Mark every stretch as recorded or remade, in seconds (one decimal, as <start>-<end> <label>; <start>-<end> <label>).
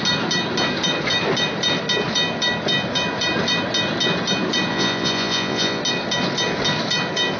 0.0-4.7 recorded; 4.7-5.8 remade; 5.8-7.4 recorded